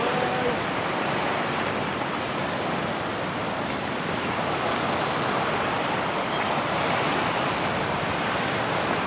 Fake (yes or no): no